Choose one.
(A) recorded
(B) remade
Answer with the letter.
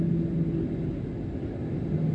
A